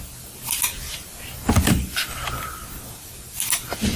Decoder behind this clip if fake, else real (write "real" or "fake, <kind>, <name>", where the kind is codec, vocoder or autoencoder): real